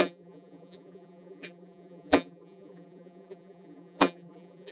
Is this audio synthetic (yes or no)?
yes